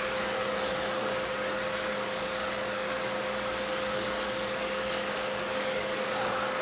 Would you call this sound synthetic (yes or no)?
yes